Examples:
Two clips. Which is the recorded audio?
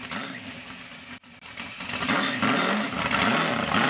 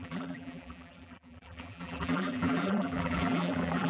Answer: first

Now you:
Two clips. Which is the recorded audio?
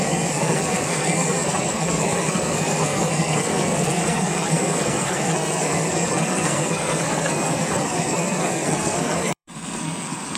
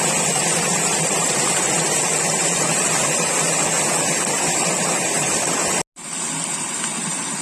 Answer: second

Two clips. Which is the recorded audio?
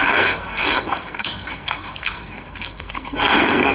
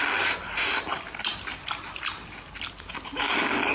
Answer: second